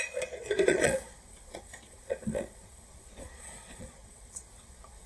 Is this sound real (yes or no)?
no